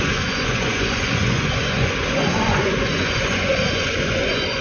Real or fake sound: fake